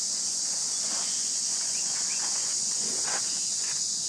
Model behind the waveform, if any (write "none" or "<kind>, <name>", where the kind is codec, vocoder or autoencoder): vocoder, Vocos